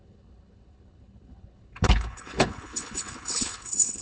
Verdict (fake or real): fake